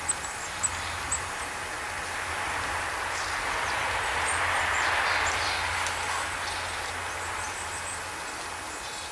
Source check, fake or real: real